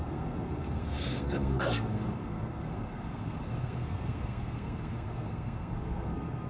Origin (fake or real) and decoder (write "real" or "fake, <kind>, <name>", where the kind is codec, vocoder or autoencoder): fake, codec, SNAC